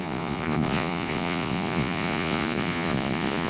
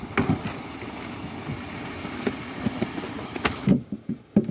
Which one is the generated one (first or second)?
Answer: first